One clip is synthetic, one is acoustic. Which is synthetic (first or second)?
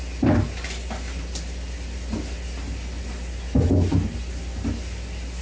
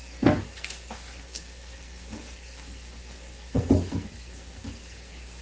second